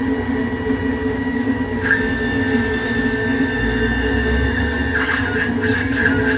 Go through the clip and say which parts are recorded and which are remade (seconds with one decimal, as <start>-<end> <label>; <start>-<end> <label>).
0.0-1.0 recorded; 1.0-4.8 remade; 4.8-6.4 recorded